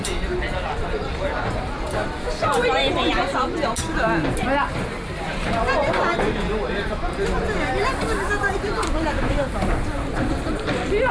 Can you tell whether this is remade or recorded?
recorded